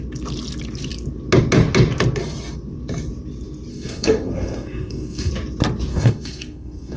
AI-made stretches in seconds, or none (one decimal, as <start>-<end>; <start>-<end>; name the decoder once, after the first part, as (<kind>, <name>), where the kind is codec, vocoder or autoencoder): 3.7-5.3 (codec, SNAC); 5.9-7.0